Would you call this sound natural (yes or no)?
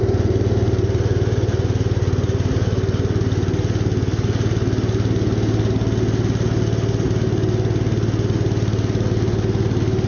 yes